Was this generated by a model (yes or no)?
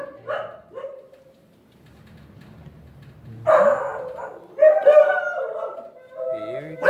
no